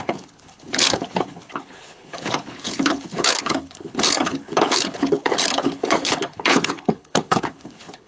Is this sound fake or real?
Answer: fake